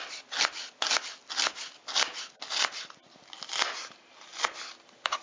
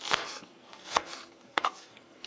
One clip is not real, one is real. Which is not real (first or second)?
second